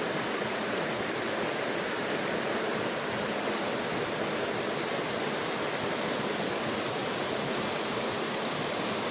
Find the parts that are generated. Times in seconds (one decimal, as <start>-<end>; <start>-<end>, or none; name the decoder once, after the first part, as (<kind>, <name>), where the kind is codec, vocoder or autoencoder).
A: 0.4-1.0 (vocoder, Vocos); 7.0-8.4